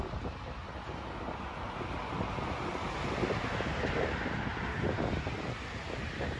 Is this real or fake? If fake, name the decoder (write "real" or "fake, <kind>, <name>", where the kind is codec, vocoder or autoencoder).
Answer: real